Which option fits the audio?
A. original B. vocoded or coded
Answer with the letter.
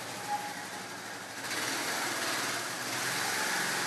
A